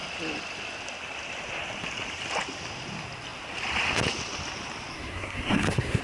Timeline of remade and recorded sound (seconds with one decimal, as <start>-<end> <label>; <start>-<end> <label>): 0.0-4.9 recorded; 4.9-6.0 remade